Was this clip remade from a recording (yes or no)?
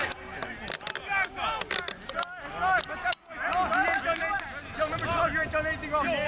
no